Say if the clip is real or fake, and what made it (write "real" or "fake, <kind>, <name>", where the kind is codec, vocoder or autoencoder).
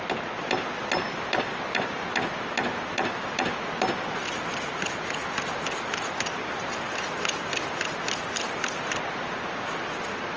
real